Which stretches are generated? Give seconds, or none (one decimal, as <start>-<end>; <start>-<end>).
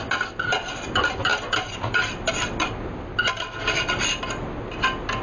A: none